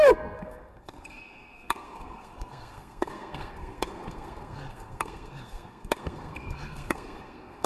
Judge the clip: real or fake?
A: fake